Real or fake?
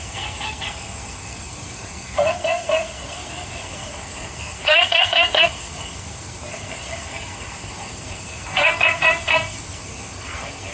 fake